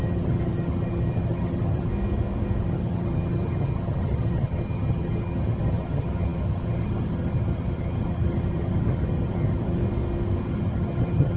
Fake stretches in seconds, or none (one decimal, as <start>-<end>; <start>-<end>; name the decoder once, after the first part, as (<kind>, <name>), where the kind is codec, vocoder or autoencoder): 0.0-1.9 (vocoder, HiFi-GAN); 2.6-9.8; 10.4-11.4